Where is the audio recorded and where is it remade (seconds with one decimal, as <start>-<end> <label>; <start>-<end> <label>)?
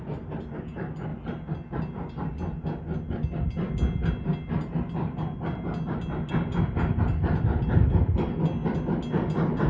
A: 0.0-9.7 recorded